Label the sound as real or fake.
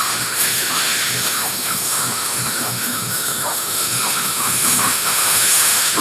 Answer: fake